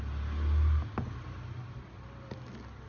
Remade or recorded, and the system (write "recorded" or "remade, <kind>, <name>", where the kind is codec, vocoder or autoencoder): recorded